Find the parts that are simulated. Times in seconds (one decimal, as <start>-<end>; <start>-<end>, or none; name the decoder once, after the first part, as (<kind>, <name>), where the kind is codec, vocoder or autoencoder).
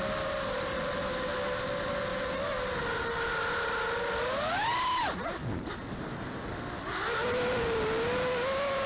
none